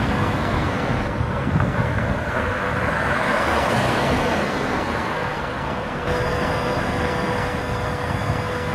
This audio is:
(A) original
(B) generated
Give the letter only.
B